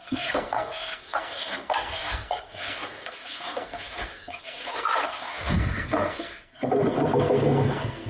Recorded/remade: remade